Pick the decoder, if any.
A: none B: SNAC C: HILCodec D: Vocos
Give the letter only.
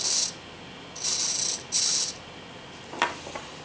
A